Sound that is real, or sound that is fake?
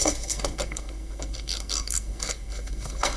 fake